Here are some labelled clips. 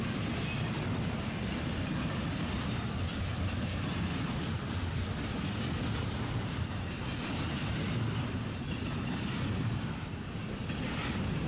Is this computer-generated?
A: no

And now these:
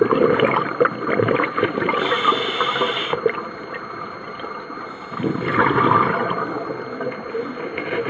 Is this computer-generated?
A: no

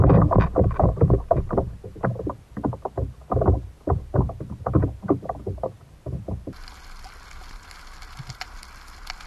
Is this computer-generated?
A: no